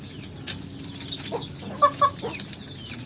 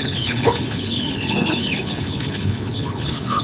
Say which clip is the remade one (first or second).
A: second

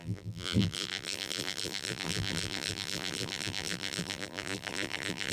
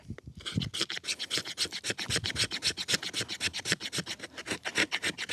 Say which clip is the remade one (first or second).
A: first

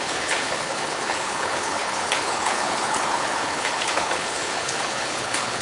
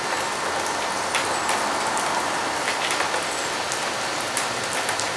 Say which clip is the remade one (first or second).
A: first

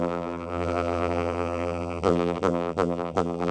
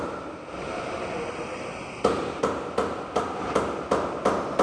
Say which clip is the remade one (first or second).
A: first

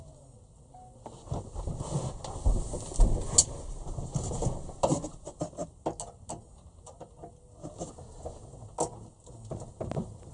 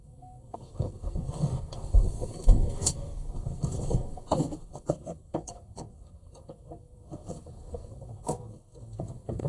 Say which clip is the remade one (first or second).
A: second